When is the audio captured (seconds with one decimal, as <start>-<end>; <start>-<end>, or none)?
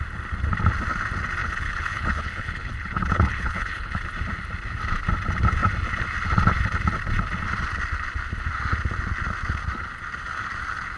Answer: 0.0-1.4; 4.0-11.0